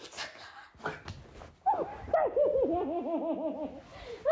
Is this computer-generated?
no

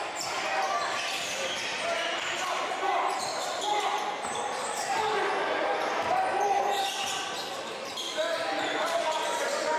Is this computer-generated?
no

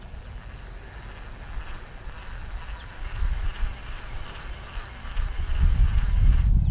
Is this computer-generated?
no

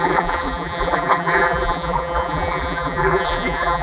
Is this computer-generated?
yes